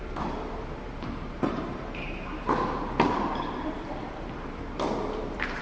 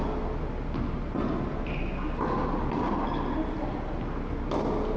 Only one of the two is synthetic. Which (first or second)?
first